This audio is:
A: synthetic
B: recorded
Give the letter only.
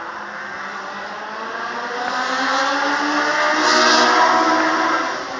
B